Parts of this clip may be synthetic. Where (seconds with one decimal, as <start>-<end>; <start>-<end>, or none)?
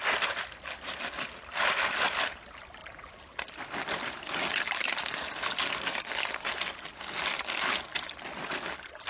none